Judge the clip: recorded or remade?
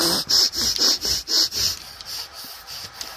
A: recorded